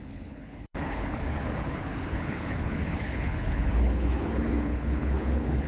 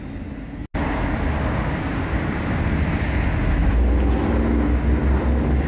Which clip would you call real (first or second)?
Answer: second